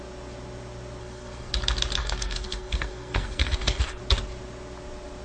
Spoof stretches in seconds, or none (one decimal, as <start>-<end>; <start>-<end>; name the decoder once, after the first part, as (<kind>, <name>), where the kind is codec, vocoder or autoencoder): 1.0-1.5 (codec, SNAC); 2.0-4.0